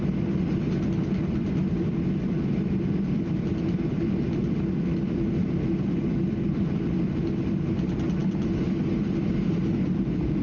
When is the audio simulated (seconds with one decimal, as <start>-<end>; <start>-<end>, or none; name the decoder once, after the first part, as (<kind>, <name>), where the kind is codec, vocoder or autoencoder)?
none